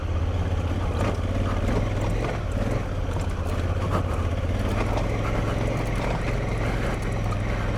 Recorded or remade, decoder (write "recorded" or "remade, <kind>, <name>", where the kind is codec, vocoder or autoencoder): recorded